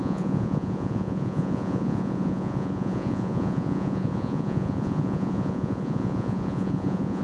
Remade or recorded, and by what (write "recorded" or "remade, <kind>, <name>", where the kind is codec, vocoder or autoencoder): remade, vocoder, Vocos